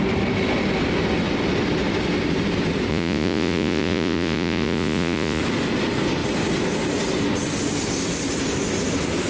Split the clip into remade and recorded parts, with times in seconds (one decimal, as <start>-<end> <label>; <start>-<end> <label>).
0.0-2.9 recorded; 2.9-5.4 remade; 5.4-9.3 recorded